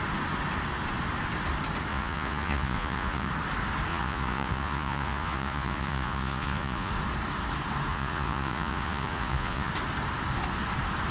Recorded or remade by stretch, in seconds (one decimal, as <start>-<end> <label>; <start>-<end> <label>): 0.0-1.9 recorded; 1.9-3.3 remade; 3.3-3.9 recorded; 3.9-6.9 remade; 6.9-7.9 recorded; 7.9-9.7 remade; 9.7-11.1 recorded